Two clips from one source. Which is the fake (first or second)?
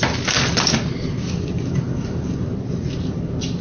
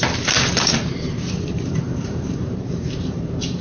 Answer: second